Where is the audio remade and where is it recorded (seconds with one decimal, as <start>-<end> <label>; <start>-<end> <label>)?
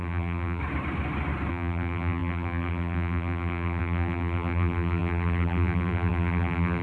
0.0-0.6 remade; 0.6-1.5 recorded; 1.5-6.8 remade